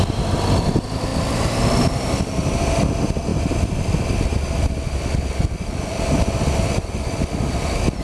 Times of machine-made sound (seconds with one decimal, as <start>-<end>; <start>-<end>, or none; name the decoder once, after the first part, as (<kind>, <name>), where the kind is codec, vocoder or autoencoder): none